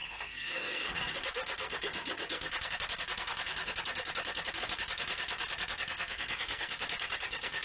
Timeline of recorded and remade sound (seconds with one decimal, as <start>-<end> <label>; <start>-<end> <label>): 0.0-7.6 remade